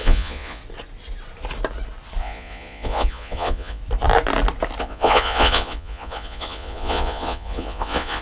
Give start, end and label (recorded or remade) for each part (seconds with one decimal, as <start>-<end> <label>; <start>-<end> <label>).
0.0-0.6 remade; 0.6-2.2 recorded; 2.2-3.8 remade; 3.8-4.8 recorded; 4.8-8.2 remade